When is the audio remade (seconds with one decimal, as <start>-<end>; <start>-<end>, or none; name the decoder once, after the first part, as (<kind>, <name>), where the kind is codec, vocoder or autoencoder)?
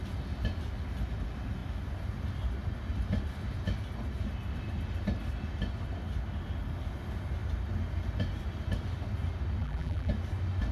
9.6-10.1 (vocoder, BigVGAN v2)